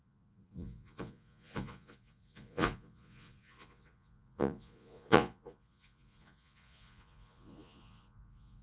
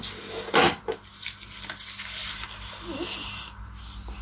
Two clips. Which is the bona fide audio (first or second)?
second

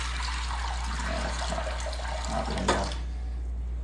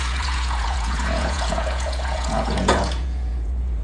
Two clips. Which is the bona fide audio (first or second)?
first